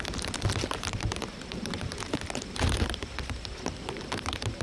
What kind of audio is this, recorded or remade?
remade